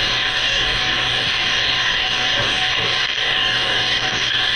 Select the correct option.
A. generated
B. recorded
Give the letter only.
A